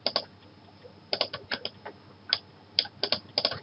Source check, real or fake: real